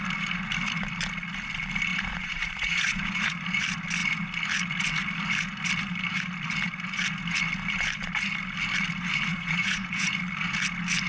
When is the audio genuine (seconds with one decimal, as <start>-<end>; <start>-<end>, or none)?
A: 0.0-1.9; 3.4-9.3; 10.1-11.1